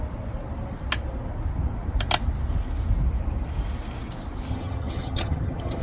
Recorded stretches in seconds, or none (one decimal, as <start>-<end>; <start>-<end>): 0.0-4.5